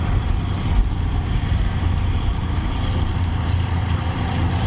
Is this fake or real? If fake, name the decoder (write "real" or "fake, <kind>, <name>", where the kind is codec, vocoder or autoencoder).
fake, vocoder, BigVGAN v2